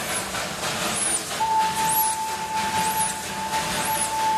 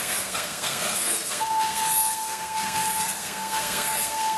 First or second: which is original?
first